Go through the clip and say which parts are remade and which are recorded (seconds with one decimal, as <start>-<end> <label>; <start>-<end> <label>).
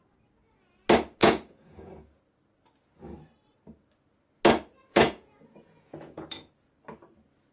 0.0-1.2 recorded; 1.2-2.2 remade; 2.2-4.9 recorded; 4.9-6.5 remade; 6.5-7.5 recorded